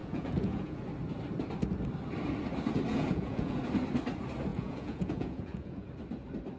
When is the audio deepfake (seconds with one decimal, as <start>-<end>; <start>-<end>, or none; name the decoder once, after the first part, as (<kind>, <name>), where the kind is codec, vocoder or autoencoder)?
0.0-0.8 (vocoder, Vocos); 2.9-3.6; 4.5-5.9